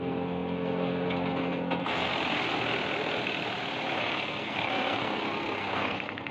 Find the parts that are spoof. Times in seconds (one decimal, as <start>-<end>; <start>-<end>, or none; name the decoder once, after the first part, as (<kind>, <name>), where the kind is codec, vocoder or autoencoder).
0.0-2.1 (codec, SNAC); 4.0-6.3